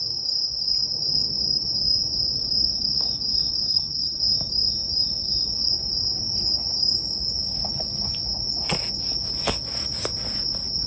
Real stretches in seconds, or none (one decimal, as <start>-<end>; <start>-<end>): 0.0-3.7; 4.2-10.9